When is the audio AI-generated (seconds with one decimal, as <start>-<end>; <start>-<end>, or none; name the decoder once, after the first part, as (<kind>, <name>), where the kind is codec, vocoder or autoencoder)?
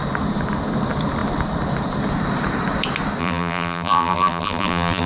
3.2-5.1 (vocoder, BigVGAN v2)